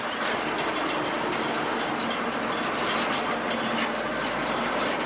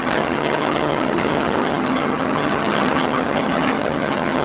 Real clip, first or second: first